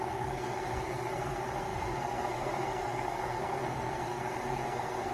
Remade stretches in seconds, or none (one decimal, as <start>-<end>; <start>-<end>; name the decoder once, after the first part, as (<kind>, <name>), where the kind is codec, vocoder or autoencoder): 0.0-5.1 (codec, SNAC)